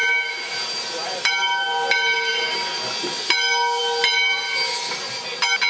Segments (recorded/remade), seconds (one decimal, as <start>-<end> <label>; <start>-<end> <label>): 0.0-5.7 recorded

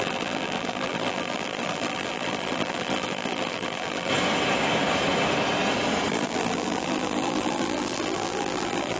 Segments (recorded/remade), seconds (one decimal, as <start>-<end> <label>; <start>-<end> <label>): 0.0-4.1 remade; 4.1-6.1 recorded; 6.1-9.0 remade

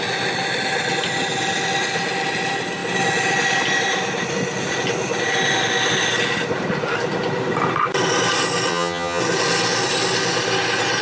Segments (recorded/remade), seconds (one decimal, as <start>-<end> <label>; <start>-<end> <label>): 0.0-8.7 recorded; 8.7-9.2 remade; 9.2-11.0 recorded

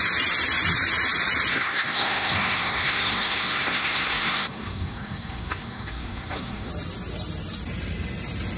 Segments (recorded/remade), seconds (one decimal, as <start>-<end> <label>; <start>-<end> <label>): 0.0-1.5 recorded; 1.5-6.7 remade; 6.7-8.6 recorded

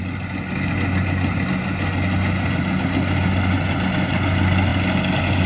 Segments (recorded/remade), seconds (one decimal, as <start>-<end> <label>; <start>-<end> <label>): 0.0-5.5 recorded